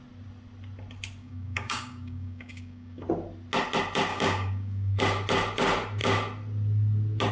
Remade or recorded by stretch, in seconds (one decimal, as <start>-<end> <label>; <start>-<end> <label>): 0.0-1.2 recorded; 1.2-3.0 remade; 3.0-4.1 recorded; 4.1-5.0 remade; 5.0-7.3 recorded